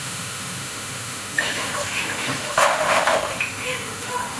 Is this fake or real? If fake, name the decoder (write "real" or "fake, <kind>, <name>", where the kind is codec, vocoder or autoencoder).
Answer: fake, autoencoder, DAC-VAE